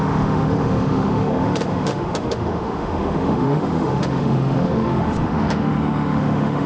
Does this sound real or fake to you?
fake